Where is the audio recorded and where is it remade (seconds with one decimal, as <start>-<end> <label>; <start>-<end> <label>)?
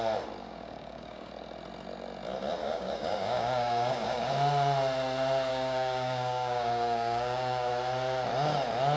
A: 0.0-0.4 recorded; 0.4-1.3 remade; 1.3-2.6 recorded; 2.6-4.3 remade; 4.3-5.5 recorded; 5.5-7.7 remade; 7.7-9.0 recorded